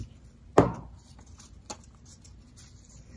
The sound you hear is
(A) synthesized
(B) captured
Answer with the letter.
B